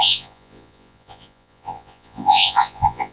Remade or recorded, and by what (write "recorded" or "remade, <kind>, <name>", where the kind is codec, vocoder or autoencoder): remade, vocoder, Vocos